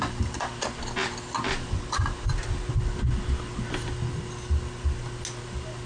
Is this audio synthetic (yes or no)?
no